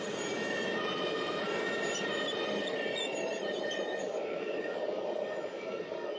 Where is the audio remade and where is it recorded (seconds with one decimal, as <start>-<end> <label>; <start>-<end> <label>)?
0.0-4.0 recorded; 4.0-6.2 remade

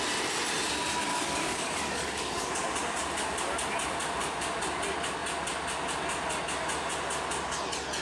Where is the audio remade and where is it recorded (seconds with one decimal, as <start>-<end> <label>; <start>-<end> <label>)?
0.0-1.1 recorded; 1.1-2.5 remade; 2.5-8.0 recorded

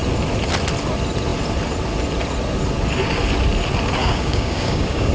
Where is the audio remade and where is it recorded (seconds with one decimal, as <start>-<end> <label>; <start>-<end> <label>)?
0.0-4.0 recorded; 4.0-5.1 remade

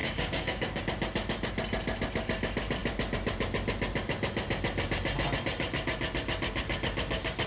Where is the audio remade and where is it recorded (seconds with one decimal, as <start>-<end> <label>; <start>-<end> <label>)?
0.0-0.8 remade; 0.8-7.5 recorded

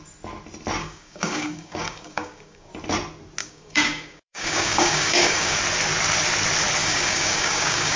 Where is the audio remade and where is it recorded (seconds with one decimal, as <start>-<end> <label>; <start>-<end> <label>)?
0.0-0.8 recorded; 0.8-2.7 remade; 2.7-3.4 recorded; 3.4-5.6 remade; 5.6-6.8 recorded; 6.8-8.0 remade

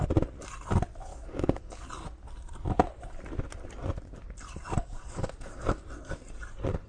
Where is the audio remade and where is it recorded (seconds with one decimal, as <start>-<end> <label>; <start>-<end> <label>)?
0.0-1.1 recorded; 1.1-1.9 remade; 1.9-4.8 recorded; 4.8-5.8 remade; 5.8-6.9 recorded

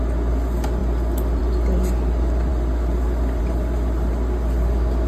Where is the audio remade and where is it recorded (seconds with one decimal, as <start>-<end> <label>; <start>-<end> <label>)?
0.0-5.1 recorded

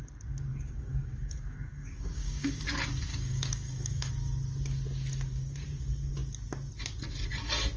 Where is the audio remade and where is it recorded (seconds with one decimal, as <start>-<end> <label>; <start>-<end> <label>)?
0.0-0.5 recorded; 0.5-2.5 remade; 2.5-3.1 recorded; 3.1-4.1 remade; 4.1-7.8 recorded